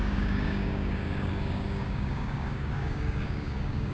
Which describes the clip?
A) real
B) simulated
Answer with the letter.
B